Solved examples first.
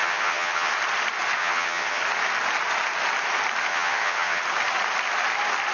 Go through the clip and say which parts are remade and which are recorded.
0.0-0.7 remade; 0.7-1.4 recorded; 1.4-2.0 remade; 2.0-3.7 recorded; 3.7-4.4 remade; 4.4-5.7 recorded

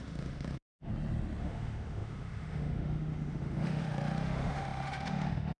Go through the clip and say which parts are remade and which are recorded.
0.0-0.9 remade; 0.9-1.4 recorded; 1.4-5.6 remade